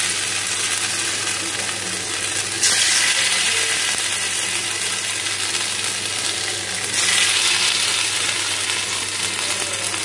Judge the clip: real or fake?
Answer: real